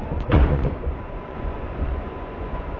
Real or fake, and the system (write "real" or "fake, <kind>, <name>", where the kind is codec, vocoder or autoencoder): fake, vocoder, Vocos